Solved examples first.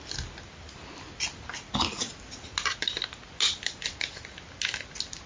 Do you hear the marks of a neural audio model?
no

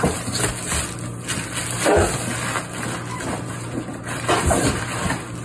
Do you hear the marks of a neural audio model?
no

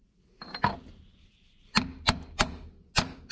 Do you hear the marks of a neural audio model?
no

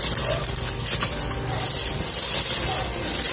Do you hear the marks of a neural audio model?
no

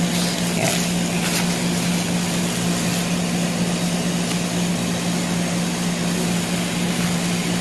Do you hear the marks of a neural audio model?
no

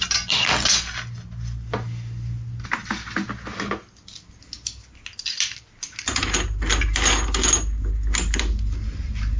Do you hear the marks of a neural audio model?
no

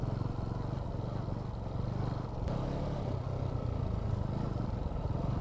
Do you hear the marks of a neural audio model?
no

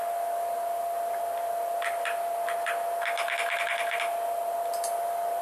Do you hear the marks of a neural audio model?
no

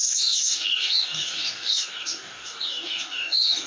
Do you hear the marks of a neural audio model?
yes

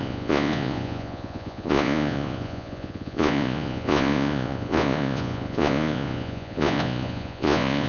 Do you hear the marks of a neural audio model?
yes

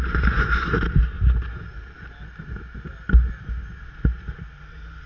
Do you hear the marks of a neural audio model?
no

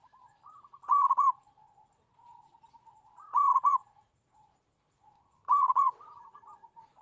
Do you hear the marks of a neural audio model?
yes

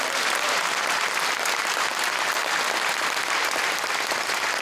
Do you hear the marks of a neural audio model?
yes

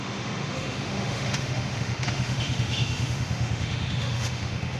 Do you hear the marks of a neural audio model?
yes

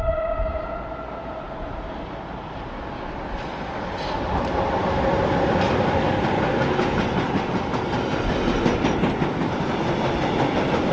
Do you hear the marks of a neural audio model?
no